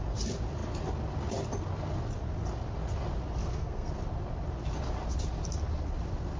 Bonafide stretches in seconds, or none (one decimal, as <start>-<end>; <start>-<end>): 0.0-3.4; 3.9-6.4